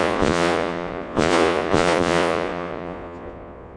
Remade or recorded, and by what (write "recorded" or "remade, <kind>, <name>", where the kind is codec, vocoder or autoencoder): remade, vocoder, Vocos